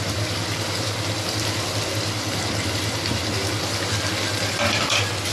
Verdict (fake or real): real